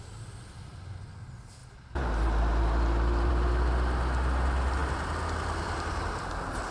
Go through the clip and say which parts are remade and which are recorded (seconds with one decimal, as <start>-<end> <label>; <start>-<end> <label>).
0.0-6.7 recorded